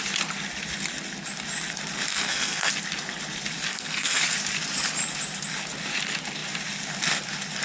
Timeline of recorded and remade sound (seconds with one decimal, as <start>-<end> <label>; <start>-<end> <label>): 0.0-2.1 recorded; 2.1-2.7 remade; 2.7-3.7 recorded; 3.7-4.2 remade; 4.2-7.6 recorded